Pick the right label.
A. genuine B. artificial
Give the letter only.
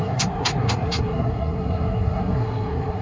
B